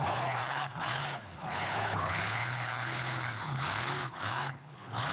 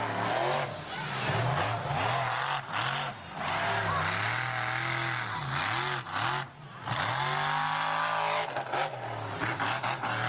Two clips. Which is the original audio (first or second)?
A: second